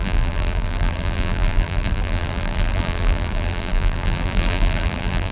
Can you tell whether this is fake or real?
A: fake